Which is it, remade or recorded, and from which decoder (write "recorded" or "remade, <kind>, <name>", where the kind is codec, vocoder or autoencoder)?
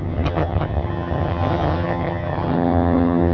remade, vocoder, HiFi-GAN